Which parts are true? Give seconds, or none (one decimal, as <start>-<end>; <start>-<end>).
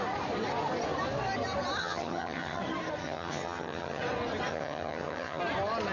0.0-1.8; 2.6-3.0; 4.0-4.5; 5.4-5.9